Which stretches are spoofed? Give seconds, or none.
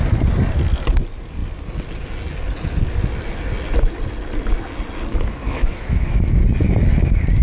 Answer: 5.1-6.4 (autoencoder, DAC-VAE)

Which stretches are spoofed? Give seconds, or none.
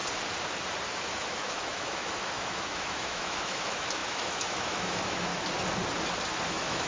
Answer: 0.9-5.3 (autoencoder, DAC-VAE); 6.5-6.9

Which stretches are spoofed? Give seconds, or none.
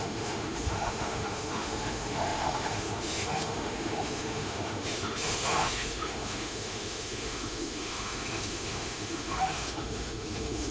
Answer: 0.0-10.7 (autoencoder, DAC-VAE)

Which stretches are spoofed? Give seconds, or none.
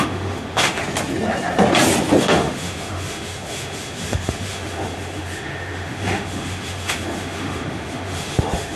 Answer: 0.0-0.8 (autoencoder, DAC-VAE); 2.2-8.8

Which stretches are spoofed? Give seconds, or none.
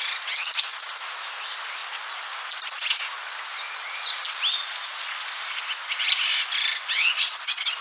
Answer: 0.7-1.4 (autoencoder, DAC-VAE)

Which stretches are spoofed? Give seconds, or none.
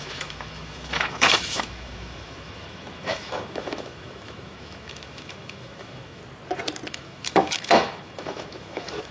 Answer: 0.0-6.2 (autoencoder, DAC-VAE); 6.9-9.1